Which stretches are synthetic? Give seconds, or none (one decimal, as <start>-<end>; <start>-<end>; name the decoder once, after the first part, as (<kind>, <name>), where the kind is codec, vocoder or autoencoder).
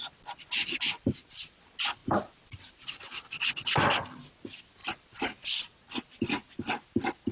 none